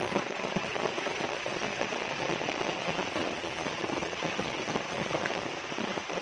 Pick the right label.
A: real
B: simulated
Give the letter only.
B